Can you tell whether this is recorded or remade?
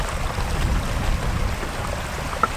recorded